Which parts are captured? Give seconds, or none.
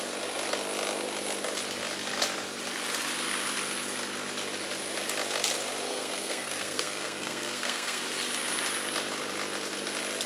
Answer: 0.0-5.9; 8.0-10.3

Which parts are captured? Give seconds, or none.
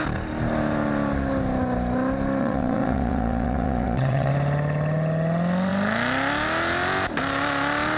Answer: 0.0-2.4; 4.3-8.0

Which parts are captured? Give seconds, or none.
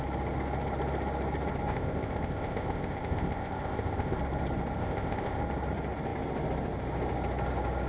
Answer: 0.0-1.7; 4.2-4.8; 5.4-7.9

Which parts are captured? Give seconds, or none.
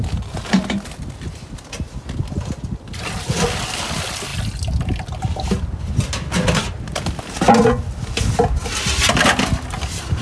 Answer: 0.0-10.2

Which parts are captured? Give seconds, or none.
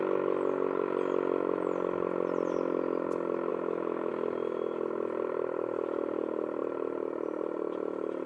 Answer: 0.0-3.5; 4.1-8.3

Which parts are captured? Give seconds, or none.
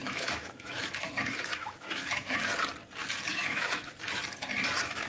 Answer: 2.4-3.3; 3.9-5.1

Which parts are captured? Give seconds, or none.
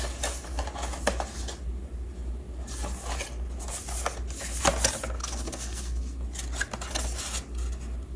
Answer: 0.0-5.2; 6.2-8.2